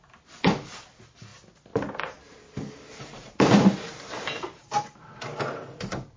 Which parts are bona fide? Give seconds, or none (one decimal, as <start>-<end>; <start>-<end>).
0.0-2.9; 5.1-6.2